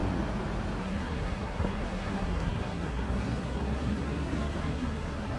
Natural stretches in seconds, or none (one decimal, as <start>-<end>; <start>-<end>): 0.0-0.8